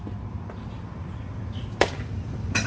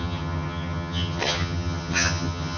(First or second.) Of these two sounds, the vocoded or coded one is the second